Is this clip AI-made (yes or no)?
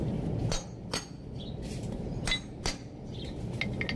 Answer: no